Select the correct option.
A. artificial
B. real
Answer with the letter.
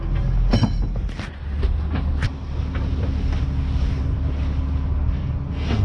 B